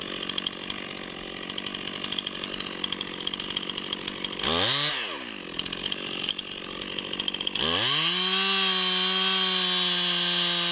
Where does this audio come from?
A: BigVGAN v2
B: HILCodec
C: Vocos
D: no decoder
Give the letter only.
D